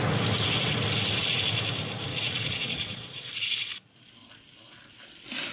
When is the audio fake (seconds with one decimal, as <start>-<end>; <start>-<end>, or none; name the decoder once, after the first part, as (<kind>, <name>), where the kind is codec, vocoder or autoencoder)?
2.1-3.3 (vocoder, Vocos)